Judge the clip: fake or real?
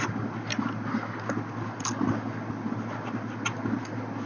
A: real